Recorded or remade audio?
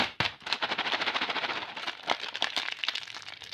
recorded